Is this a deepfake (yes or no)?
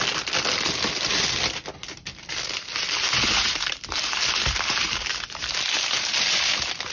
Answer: no